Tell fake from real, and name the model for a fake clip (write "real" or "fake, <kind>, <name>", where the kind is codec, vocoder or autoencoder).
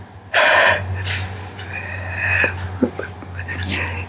real